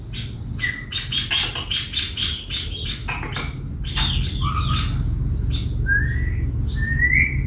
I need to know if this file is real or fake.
real